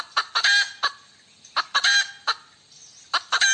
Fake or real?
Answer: real